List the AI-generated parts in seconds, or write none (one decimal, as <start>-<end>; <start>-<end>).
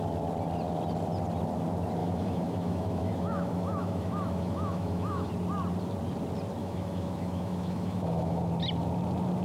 2.0-5.3; 6.6-8.4